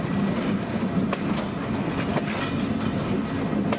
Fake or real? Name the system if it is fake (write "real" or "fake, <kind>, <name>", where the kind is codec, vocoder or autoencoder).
real